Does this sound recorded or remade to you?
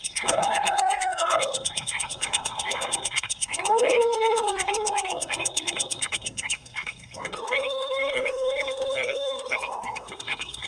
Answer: remade